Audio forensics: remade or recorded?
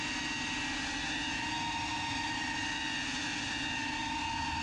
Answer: recorded